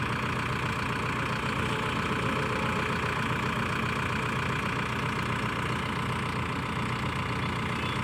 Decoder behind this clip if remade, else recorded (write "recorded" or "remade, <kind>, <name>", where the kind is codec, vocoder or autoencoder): recorded